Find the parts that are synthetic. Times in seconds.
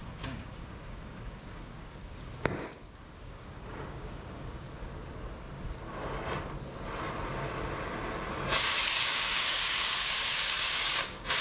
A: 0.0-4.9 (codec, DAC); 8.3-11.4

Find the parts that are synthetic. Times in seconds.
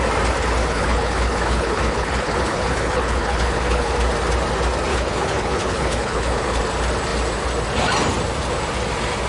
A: 0.6-3.9 (codec, HILCodec); 4.9-6.6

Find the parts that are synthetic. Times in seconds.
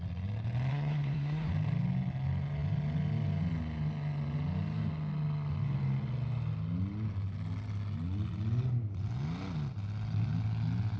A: 0.7-1.5 (codec, SNAC)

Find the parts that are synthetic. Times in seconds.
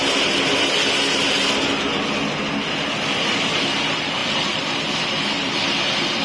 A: 4.2-5.7 (vocoder, BigVGAN v2)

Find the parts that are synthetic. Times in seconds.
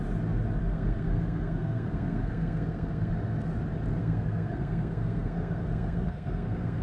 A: 0.6-3.1 (codec, SNAC); 4.0-6.8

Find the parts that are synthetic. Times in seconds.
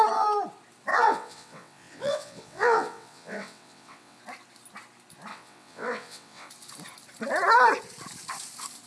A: 0.9-4.2 (vocoder, WaveNeXt); 5.3-6.5